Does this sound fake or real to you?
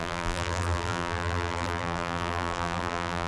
fake